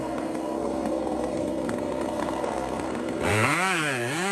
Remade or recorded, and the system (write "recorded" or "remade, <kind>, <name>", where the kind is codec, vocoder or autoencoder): remade, codec, SNAC